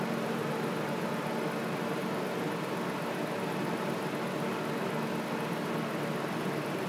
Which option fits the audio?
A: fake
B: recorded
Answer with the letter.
B